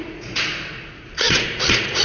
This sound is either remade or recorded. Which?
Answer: remade